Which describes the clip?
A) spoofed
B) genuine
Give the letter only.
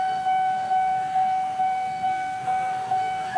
A